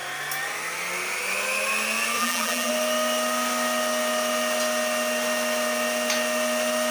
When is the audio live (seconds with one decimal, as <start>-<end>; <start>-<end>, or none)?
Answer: 0.0-2.2; 2.7-6.9